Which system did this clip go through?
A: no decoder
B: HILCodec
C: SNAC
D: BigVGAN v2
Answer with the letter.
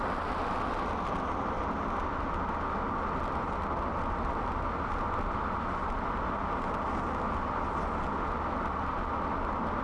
A